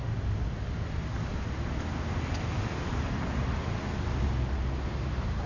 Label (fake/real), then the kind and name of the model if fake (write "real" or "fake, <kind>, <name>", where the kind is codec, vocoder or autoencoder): real